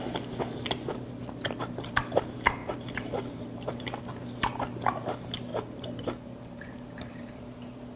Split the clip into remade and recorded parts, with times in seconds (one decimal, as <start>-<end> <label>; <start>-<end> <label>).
0.0-2.6 recorded; 2.6-4.0 remade; 4.0-5.5 recorded; 5.5-7.4 remade; 7.4-8.0 recorded